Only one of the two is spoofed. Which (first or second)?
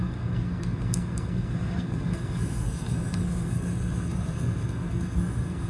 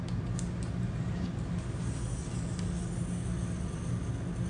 first